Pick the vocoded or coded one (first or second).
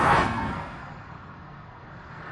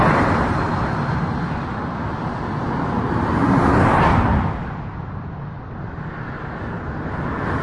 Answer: first